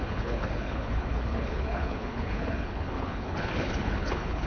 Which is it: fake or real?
fake